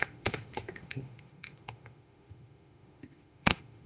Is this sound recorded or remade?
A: remade